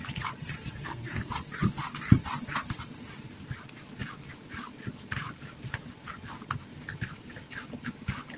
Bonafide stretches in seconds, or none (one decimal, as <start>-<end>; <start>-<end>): 0.0-0.8; 1.3-8.4